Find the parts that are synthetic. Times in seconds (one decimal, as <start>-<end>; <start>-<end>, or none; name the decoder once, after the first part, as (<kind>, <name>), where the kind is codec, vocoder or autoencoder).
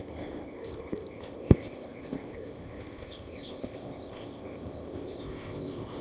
0.0-6.0 (codec, ZipCodec)